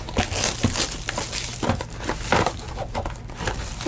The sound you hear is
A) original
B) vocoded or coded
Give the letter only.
A